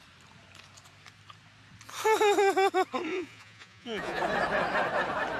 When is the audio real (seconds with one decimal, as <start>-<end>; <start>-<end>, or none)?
0.0-3.1; 4.2-5.4